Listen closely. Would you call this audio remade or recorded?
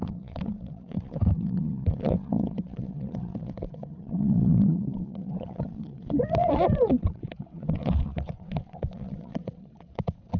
remade